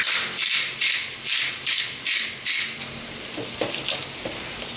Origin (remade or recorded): recorded